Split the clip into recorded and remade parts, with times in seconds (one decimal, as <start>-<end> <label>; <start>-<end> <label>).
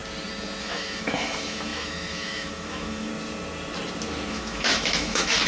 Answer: 0.0-0.6 recorded; 0.6-3.1 remade; 3.1-4.3 recorded; 4.3-5.5 remade